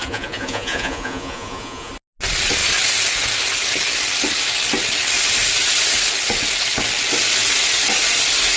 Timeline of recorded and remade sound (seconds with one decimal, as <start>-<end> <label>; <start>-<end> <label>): 0.0-1.9 remade; 1.9-8.6 recorded